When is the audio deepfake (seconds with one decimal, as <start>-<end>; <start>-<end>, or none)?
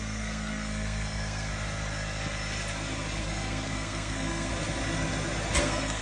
0.0-1.5; 3.2-4.5; 5.6-6.0